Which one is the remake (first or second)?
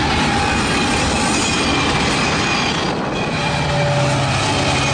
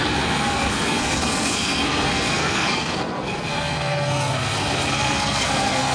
second